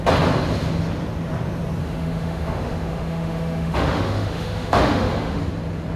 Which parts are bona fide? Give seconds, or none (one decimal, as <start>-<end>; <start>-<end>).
0.0-1.8; 5.4-6.0